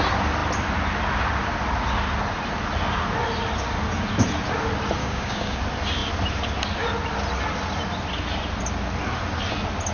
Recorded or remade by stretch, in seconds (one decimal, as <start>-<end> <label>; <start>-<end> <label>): 0.0-5.0 recorded; 5.0-5.6 remade; 5.6-9.9 recorded